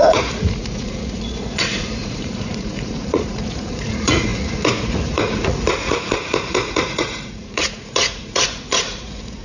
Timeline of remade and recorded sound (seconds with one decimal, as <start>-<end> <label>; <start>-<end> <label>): 0.0-9.4 remade